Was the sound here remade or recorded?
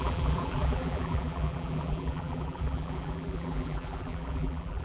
remade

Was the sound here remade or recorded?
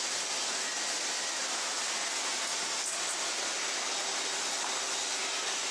recorded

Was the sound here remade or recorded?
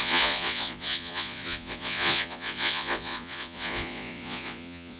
remade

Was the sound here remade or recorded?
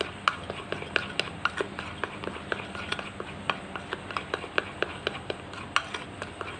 recorded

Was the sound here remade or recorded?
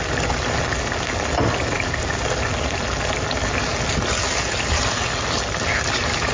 recorded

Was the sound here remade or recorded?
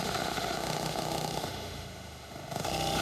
remade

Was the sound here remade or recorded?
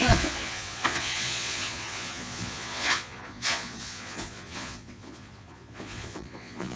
remade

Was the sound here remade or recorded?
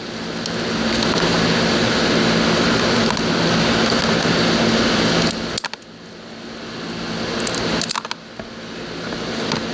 recorded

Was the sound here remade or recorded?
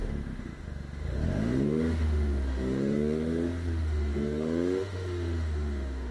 remade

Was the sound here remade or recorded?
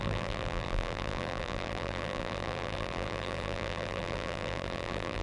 remade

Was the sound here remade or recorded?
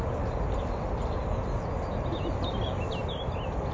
recorded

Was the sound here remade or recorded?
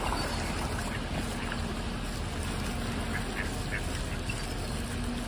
recorded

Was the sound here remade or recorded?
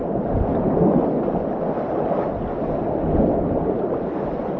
recorded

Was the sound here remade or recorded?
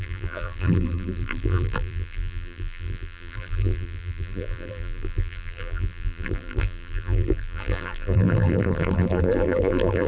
remade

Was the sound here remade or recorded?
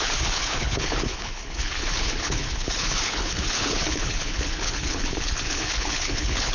remade